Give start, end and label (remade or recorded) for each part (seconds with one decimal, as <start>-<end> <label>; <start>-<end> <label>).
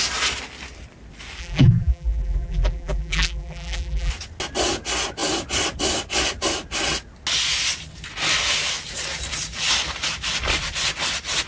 0.0-1.4 recorded; 1.4-4.1 remade; 4.1-11.5 recorded